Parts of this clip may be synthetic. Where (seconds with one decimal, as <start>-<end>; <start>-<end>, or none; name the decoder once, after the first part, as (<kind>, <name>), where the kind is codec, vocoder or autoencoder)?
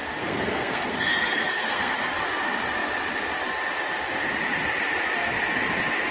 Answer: 0.0-2.0 (codec, SNAC)